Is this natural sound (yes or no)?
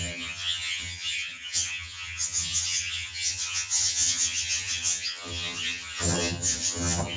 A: no